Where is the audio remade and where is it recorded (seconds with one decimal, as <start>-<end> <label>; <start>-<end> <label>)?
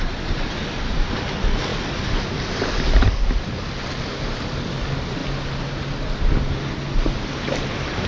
0.0-8.1 recorded